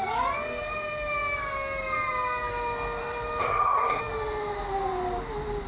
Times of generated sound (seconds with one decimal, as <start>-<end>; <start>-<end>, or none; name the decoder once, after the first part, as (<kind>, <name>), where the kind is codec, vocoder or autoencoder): 3.4-4.0 (codec, SNAC)